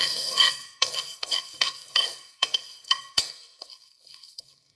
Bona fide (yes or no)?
no